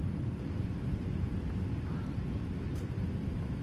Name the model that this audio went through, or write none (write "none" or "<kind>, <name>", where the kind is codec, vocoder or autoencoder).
vocoder, BigVGAN v2